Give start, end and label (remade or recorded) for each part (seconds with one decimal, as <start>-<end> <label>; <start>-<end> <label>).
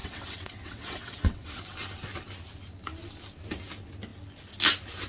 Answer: 0.0-1.6 remade; 1.6-5.1 recorded